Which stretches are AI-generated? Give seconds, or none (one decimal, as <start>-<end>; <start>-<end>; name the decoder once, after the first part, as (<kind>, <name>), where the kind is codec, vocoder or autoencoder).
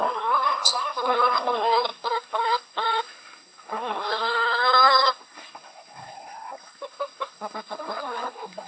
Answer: 0.0-8.7 (codec, SNAC)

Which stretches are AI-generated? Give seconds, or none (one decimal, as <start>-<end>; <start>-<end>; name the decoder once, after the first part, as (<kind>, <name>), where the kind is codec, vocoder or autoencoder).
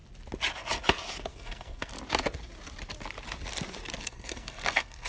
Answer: 1.3-1.9 (codec, SNAC); 4.0-5.1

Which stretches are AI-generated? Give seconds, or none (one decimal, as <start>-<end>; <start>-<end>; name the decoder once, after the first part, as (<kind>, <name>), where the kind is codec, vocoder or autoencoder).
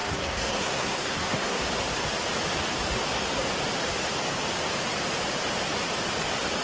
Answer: 0.0-1.6 (codec, SNAC)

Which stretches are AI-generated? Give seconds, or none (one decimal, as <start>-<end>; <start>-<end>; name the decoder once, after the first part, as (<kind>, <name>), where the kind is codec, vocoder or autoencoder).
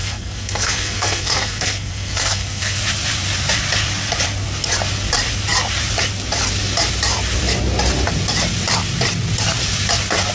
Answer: 0.0-2.8 (codec, SNAC)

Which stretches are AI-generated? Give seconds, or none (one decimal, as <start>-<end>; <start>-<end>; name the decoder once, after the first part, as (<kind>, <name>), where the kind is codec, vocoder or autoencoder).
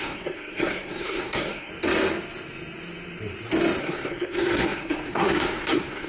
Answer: 0.0-1.7 (codec, SNAC); 3.8-6.1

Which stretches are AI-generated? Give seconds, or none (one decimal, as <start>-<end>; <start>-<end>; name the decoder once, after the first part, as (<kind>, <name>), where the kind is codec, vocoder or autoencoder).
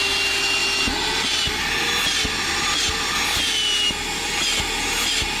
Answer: none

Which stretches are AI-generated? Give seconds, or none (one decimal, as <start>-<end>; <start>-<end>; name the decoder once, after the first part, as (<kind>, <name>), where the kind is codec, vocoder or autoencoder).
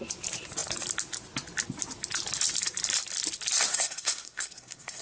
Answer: 3.7-5.0 (codec, SNAC)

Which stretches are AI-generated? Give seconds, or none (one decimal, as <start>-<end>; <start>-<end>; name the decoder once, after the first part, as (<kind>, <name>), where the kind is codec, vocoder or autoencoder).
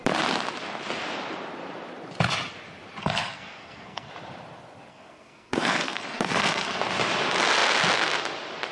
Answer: 3.0-4.1 (codec, SNAC); 4.9-6.8